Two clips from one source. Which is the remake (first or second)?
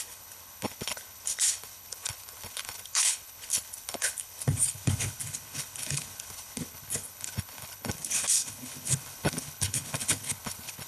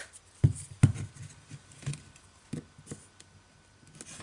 first